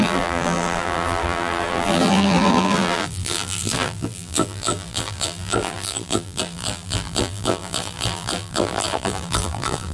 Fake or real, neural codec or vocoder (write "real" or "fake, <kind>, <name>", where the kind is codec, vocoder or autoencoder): fake, vocoder, BigVGAN v2